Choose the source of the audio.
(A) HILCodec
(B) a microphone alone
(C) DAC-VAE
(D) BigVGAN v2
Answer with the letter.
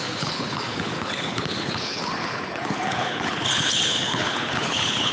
A